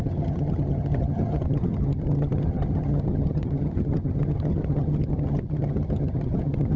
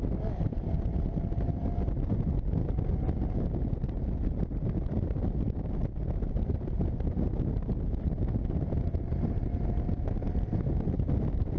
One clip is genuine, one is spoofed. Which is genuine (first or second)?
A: second